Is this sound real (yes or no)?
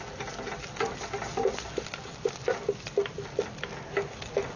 yes